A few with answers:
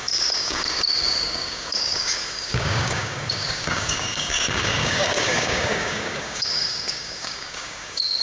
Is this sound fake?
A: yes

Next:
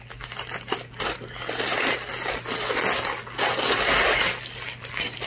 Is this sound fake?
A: no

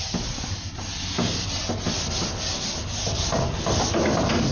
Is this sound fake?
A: no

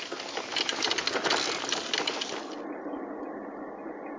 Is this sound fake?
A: no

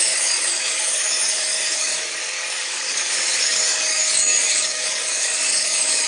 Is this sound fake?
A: yes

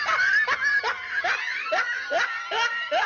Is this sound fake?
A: no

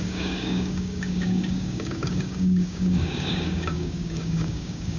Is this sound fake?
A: yes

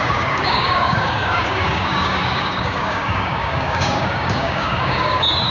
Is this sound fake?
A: yes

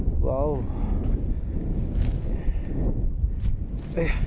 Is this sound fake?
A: no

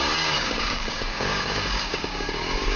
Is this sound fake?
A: yes